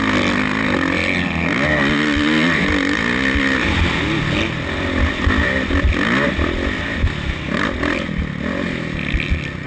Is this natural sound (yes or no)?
yes